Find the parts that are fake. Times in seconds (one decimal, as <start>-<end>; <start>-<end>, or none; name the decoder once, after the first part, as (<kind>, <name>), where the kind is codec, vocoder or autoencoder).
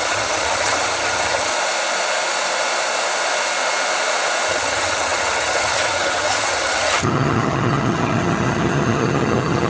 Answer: 0.0-1.5 (vocoder, HiFi-GAN); 4.5-9.7